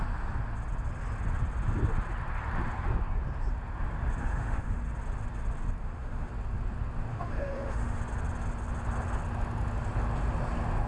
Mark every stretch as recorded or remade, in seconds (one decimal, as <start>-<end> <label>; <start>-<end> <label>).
0.0-4.2 recorded; 4.2-4.8 remade; 4.8-5.8 recorded; 5.8-6.3 remade; 6.3-7.1 recorded; 7.1-8.0 remade; 8.0-10.9 recorded